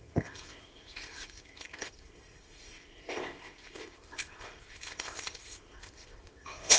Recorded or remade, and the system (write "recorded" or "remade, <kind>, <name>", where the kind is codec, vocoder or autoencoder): remade, codec, ZipCodec